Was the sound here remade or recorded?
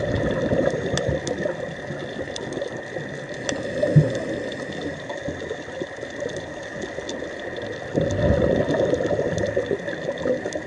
recorded